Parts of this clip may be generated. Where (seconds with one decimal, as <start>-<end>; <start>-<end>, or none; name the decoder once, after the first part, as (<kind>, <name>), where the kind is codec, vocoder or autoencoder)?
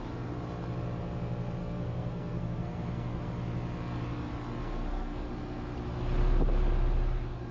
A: 1.6-3.3 (codec, SNAC); 4.6-5.3